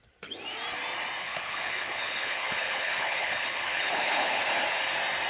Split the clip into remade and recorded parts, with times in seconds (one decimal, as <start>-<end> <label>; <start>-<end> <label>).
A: 0.0-1.2 recorded; 1.2-4.4 remade; 4.4-5.3 recorded